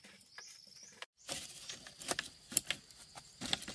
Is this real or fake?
real